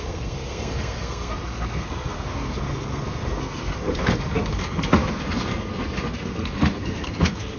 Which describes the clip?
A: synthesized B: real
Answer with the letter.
A